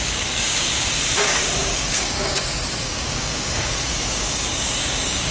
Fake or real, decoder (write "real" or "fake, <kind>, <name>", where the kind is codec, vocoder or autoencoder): fake, codec, DAC